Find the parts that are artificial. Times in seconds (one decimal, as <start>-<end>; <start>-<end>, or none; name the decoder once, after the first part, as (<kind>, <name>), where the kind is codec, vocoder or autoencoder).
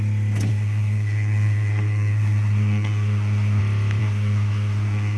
0.5-3.6 (codec, SNAC); 4.0-5.2